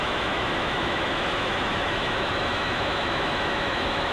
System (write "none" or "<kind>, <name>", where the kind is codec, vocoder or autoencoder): autoencoder, DAC-VAE